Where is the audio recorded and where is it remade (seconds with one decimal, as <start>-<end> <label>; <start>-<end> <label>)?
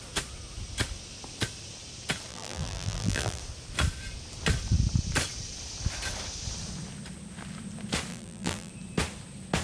0.0-2.3 recorded; 2.3-3.4 remade; 3.4-8.1 recorded; 8.1-8.7 remade; 8.7-9.6 recorded